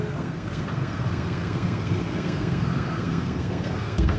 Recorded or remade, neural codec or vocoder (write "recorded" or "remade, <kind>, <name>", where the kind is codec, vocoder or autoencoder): remade, codec, SNAC